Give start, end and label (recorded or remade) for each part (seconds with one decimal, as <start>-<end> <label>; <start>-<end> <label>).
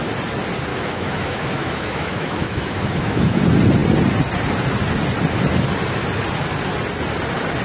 0.0-0.7 recorded; 0.7-3.4 remade; 3.4-7.6 recorded